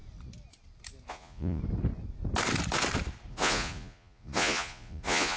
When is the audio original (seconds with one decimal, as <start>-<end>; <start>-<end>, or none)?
0.0-1.1; 1.6-3.3